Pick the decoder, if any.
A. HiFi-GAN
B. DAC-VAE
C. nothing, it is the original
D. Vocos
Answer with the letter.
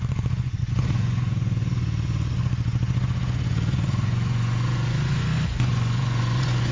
D